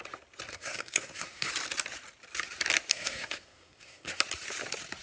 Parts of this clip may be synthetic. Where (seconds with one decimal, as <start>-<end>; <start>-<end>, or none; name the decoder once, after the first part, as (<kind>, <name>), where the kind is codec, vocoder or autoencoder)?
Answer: 0.5-1.5 (codec, SNAC); 2.9-4.2